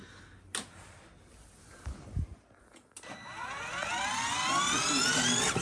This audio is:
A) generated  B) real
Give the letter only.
B